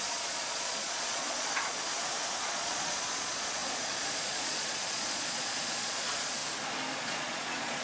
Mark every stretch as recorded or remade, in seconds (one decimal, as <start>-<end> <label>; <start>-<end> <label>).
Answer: 0.0-1.8 remade; 1.8-2.4 recorded; 2.4-6.4 remade; 6.4-7.0 recorded; 7.0-7.8 remade